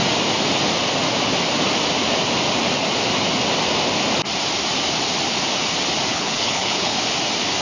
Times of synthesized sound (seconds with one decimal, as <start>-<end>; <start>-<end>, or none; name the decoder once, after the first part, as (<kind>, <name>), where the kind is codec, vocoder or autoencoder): 6.1-7.0 (codec, HILCodec)